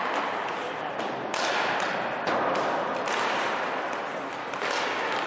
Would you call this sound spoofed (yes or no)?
no